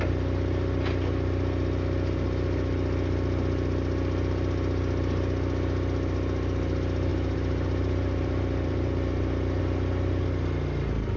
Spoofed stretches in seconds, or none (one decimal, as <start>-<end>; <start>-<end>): 7.1-9.6